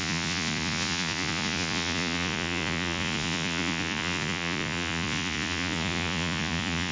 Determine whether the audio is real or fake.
fake